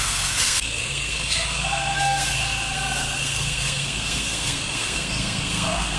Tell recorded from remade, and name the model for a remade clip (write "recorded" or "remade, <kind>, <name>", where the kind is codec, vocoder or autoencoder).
remade, codec, SNAC